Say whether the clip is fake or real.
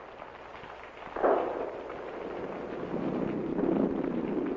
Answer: real